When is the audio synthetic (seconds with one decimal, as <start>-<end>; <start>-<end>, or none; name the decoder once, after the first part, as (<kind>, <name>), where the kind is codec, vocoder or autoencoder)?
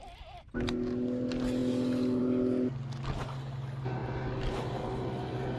none